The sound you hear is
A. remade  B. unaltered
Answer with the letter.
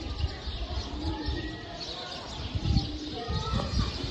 B